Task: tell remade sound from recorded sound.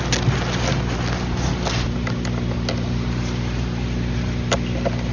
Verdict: recorded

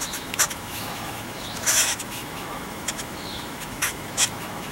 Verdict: remade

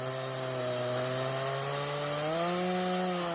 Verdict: recorded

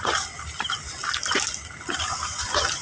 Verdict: recorded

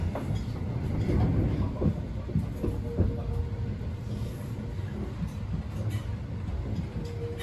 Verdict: recorded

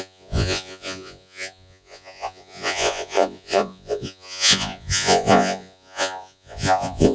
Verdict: remade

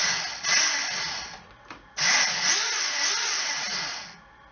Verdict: recorded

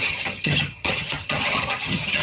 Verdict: remade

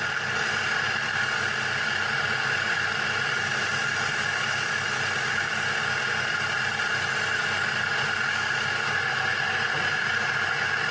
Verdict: recorded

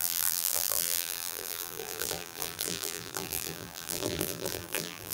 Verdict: remade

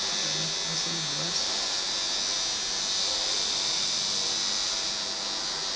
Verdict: recorded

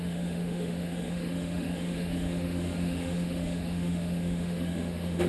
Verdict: remade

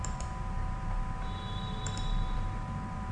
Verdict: remade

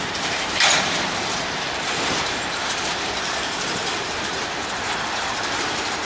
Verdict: remade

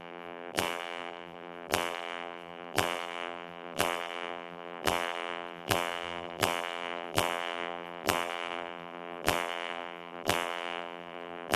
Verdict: remade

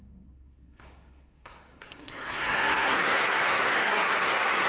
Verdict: remade